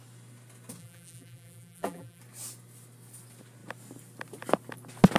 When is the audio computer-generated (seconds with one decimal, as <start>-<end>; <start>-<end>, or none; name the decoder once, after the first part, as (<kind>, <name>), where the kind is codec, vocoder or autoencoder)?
0.8-2.2 (vocoder, BigVGAN v2)